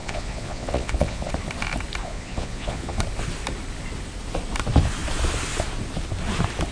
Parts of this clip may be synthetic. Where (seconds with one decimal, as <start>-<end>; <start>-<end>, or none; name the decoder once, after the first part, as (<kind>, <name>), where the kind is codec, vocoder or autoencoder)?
0.0-1.3 (vocoder, Vocos); 2.0-3.0